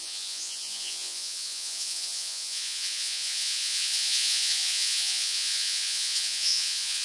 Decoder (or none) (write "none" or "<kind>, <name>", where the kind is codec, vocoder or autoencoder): vocoder, Vocos